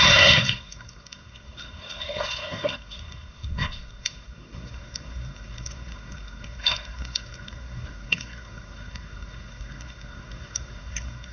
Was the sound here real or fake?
fake